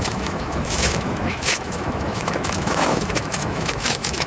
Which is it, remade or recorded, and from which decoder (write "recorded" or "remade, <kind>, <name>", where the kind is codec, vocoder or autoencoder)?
remade, autoencoder, DAC-VAE